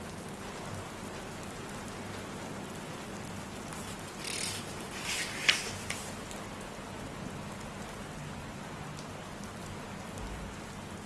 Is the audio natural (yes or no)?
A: yes